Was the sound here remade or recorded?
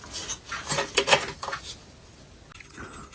recorded